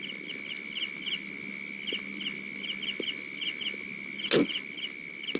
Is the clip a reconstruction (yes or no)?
no